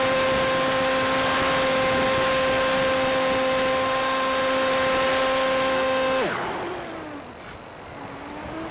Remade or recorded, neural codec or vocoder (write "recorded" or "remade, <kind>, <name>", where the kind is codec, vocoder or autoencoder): recorded